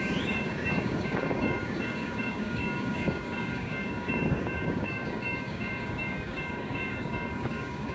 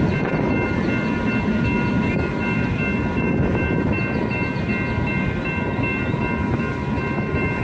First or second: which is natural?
second